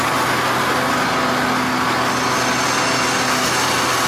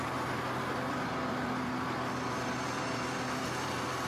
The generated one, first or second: second